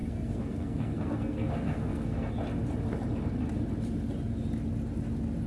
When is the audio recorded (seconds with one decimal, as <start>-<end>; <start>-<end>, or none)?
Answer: 2.3-5.5